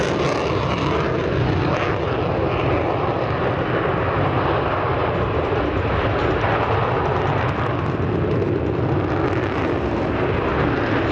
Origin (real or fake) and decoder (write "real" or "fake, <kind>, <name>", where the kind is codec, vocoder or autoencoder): real